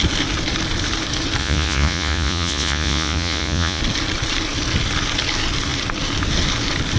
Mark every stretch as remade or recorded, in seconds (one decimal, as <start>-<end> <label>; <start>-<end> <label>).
0.0-1.4 recorded; 1.4-3.8 remade; 3.8-7.0 recorded